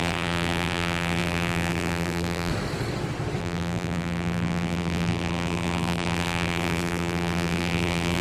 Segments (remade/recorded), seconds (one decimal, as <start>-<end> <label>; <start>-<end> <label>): 0.0-2.5 remade; 2.5-3.4 recorded; 3.4-8.2 remade